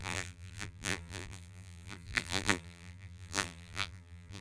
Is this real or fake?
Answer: fake